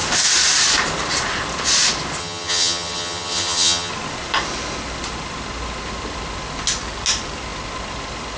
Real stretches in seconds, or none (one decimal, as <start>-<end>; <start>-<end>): 0.0-2.2; 3.9-8.4